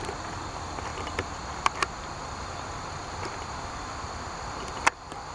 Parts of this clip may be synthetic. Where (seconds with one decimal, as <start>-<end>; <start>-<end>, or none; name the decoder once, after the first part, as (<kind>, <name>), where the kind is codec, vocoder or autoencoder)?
none